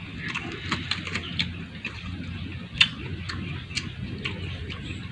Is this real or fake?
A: real